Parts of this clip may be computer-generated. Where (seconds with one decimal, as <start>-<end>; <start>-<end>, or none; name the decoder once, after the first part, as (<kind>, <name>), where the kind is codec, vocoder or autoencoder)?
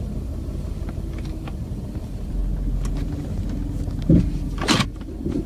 0.0-2.4 (vocoder, BigVGAN v2); 4.2-5.5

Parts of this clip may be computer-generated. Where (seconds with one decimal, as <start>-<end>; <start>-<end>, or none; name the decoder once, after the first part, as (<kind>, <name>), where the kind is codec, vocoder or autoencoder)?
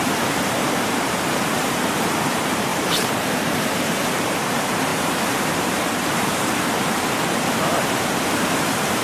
0.0-9.0 (vocoder, BigVGAN v2)